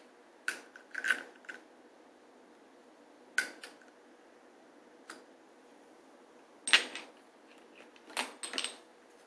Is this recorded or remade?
recorded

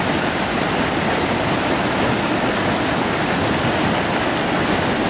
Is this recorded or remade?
recorded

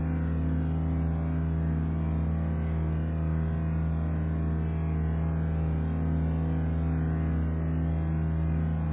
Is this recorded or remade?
recorded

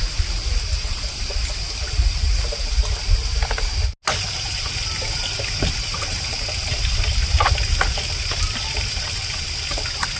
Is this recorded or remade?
recorded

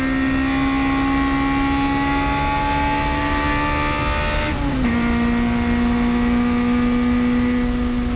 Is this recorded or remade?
recorded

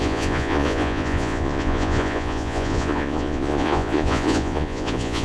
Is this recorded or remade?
remade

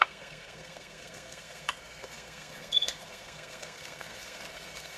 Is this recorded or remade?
remade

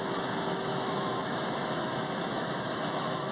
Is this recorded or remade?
remade